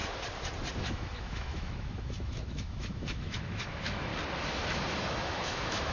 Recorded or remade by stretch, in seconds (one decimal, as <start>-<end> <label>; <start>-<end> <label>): 0.0-0.8 recorded; 0.8-4.1 remade; 4.1-5.0 recorded; 5.0-5.9 remade